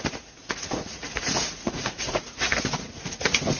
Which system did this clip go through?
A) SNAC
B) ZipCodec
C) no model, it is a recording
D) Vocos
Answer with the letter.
D